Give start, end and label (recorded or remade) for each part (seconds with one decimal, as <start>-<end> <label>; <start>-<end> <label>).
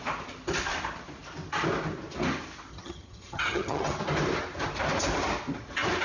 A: 0.0-2.7 recorded; 2.7-4.0 remade; 4.0-6.0 recorded